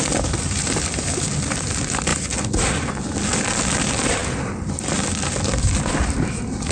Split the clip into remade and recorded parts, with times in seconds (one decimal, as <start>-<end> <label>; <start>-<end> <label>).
0.0-6.7 recorded